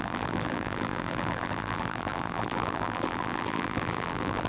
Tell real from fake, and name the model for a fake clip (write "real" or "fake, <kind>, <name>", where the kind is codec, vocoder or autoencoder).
fake, vocoder, BigVGAN v2